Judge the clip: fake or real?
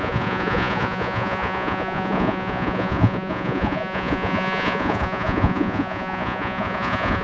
fake